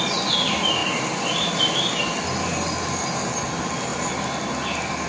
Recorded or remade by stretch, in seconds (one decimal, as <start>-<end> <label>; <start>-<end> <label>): 0.0-5.1 recorded